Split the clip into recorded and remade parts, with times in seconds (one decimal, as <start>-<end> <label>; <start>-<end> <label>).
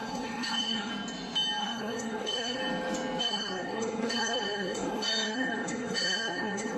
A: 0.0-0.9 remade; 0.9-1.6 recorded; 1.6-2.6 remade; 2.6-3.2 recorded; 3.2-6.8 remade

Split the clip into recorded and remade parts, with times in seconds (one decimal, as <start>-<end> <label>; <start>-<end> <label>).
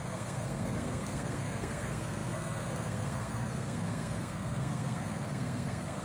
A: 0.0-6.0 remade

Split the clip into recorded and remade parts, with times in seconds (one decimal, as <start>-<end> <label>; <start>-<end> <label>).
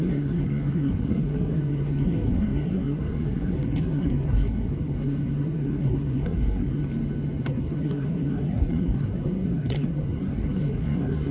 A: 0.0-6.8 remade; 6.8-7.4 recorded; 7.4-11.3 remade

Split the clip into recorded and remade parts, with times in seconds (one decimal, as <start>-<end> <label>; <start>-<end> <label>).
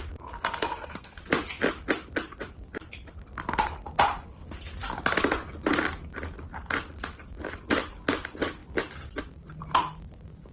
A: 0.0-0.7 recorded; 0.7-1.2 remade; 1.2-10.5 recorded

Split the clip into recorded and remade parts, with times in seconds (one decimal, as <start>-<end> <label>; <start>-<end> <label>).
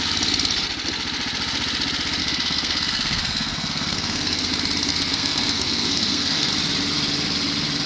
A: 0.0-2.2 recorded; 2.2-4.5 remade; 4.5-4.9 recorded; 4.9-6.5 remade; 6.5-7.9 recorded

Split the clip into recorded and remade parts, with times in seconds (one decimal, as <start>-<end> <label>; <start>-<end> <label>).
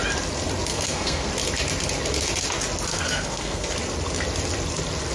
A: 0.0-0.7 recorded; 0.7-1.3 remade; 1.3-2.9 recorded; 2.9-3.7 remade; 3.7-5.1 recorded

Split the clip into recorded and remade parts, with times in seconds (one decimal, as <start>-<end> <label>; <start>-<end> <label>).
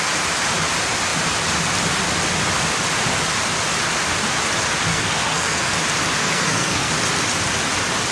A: 0.0-4.9 recorded; 4.9-5.7 remade; 5.7-6.2 recorded; 6.2-6.9 remade; 6.9-8.1 recorded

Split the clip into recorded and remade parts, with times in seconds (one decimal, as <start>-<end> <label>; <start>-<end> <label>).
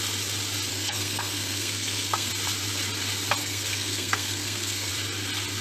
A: 0.0-0.7 recorded; 0.7-2.3 remade; 2.3-3.4 recorded; 3.4-4.9 remade; 4.9-5.6 recorded